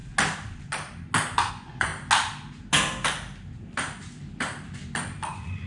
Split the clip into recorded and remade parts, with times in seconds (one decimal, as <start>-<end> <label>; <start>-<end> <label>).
0.0-1.5 recorded; 1.5-1.9 remade; 1.9-5.3 recorded; 5.3-5.7 remade